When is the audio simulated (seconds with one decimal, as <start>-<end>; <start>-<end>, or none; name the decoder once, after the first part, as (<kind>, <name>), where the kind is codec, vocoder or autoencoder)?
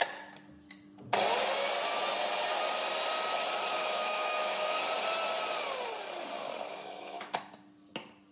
3.8-4.8 (autoencoder, DAC-VAE); 6.7-7.5